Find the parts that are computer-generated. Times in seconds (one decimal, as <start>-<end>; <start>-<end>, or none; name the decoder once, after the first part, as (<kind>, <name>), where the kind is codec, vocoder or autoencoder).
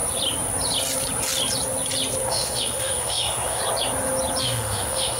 2.3-3.6 (autoencoder, DAC-VAE); 4.4-5.2